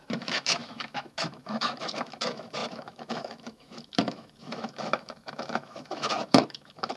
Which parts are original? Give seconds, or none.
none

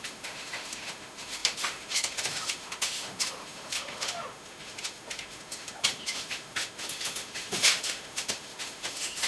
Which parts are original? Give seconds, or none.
none

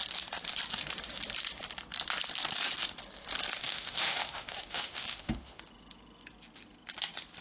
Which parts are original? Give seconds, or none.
0.0-3.6; 5.6-7.4

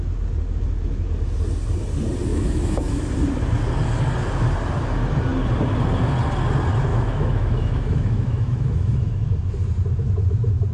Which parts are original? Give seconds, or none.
0.0-2.3; 3.0-6.9; 9.3-10.7

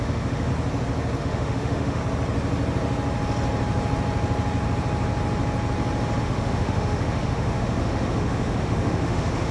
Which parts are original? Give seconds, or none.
0.5-1.2; 2.0-6.2

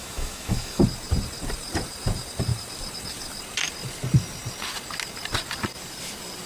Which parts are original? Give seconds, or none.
0.8-6.5